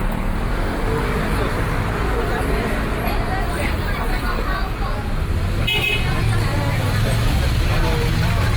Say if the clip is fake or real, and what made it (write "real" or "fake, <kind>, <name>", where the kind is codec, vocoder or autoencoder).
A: real